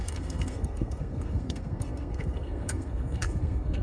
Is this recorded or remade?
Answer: remade